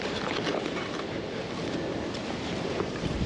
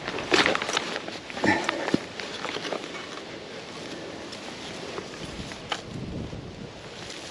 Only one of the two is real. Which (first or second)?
second